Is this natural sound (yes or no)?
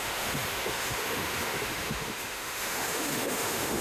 no